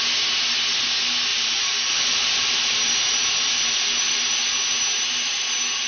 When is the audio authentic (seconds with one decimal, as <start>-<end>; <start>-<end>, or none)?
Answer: 0.0-1.3; 4.8-5.9